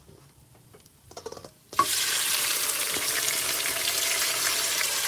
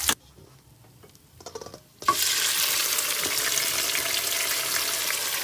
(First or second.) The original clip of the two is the second